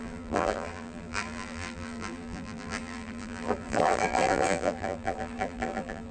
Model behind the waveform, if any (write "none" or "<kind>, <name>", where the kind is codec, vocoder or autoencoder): vocoder, BigVGAN v2